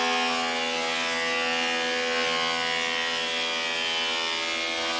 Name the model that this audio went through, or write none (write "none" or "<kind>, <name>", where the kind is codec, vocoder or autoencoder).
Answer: none